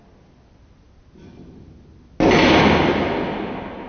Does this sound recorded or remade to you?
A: recorded